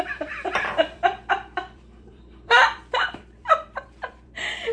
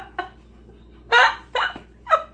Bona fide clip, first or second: second